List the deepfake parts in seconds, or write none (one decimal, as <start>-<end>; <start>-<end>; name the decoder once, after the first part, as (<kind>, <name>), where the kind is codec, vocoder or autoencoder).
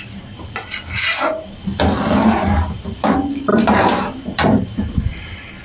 0.0-1.6 (vocoder, BigVGAN v2); 2.2-5.6